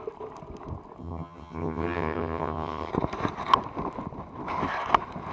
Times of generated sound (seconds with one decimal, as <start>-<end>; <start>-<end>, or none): 1.0-2.9